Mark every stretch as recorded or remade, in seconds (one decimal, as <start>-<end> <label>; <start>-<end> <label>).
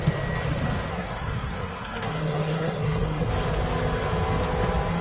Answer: 0.0-0.9 recorded; 0.9-3.3 remade; 3.3-5.0 recorded